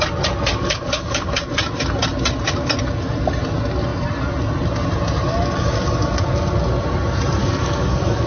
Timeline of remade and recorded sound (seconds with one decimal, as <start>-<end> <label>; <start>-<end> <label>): 0.0-0.5 recorded; 0.5-1.4 remade; 1.4-7.4 recorded; 7.4-8.3 remade